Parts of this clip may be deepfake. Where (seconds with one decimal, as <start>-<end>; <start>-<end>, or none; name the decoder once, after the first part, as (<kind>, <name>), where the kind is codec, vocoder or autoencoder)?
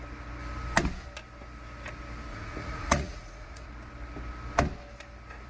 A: 2.3-3.7 (vocoder, Vocos)